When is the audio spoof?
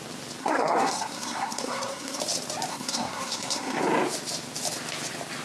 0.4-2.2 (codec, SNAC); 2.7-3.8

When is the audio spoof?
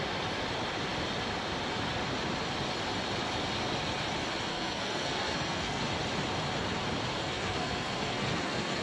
4.5-5.8 (codec, SNAC); 7.2-8.8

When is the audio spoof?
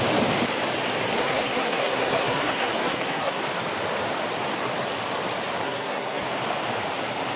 1.1-3.4 (codec, SNAC); 5.6-6.2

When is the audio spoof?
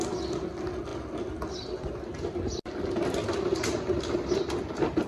none